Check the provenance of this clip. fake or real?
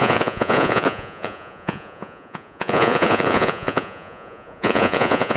fake